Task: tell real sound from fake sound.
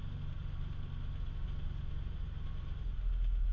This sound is real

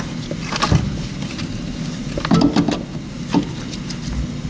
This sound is real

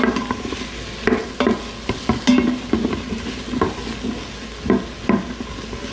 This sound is real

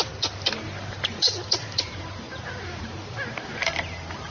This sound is fake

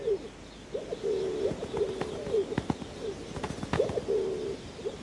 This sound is real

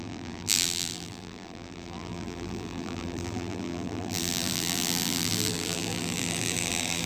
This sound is fake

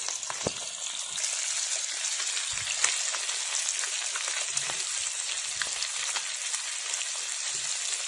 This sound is real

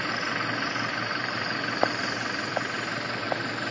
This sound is fake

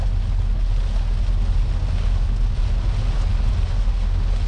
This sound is real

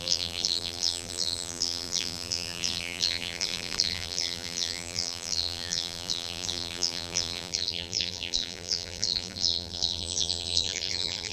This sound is fake